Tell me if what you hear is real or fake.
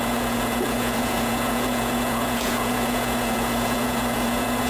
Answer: fake